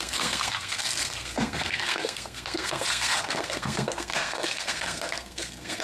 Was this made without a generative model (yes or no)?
no